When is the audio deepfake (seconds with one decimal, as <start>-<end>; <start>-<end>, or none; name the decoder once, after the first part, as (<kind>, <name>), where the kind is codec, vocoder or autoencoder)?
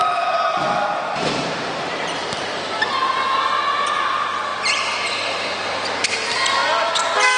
none